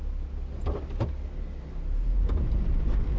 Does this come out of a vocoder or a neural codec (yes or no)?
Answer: no